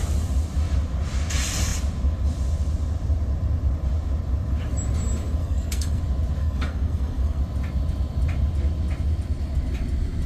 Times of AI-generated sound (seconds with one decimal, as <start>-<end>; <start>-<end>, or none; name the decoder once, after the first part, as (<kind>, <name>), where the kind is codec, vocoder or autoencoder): 5.4-6.0 (codec, SNAC); 6.4-7.4